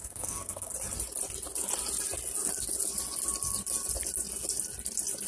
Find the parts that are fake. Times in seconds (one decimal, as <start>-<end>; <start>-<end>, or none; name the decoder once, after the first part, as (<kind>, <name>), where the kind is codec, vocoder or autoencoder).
0.0-0.7 (codec, SNAC)